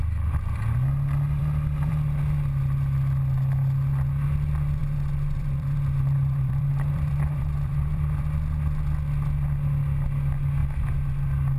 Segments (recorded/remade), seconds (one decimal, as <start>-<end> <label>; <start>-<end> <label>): 0.0-4.8 recorded; 4.8-8.2 remade; 8.2-11.6 recorded

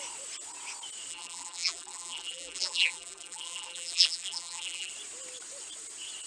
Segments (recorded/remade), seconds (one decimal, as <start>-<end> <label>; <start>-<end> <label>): 0.0-1.1 recorded; 1.1-4.9 remade; 4.9-6.3 recorded

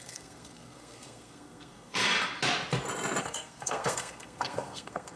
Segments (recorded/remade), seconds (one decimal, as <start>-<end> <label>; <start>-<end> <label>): 0.0-2.0 remade; 2.0-3.2 recorded; 3.2-5.2 remade

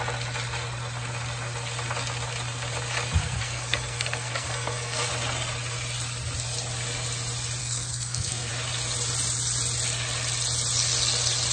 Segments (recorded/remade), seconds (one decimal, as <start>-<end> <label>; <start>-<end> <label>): 0.0-3.2 recorded; 3.2-5.1 remade; 5.1-7.6 recorded; 7.6-8.5 remade; 8.5-11.5 recorded

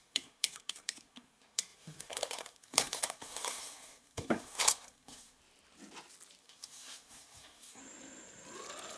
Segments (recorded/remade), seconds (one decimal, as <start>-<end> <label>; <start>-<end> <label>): 0.0-5.4 remade; 5.4-6.4 recorded; 6.4-7.8 remade; 7.8-9.0 recorded

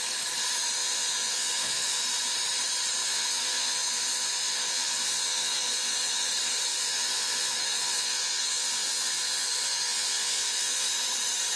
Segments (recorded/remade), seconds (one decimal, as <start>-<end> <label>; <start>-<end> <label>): 0.0-0.8 recorded; 0.8-2.0 remade; 2.0-3.0 recorded; 3.0-6.3 remade; 6.3-6.7 recorded; 6.7-10.9 remade; 10.9-11.6 recorded